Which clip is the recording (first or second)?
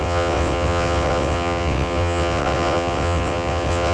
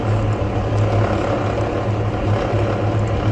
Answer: second